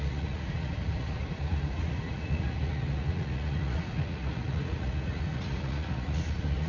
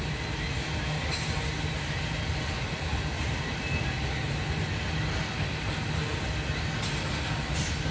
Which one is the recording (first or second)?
second